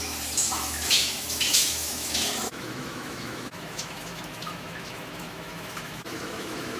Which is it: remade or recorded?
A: remade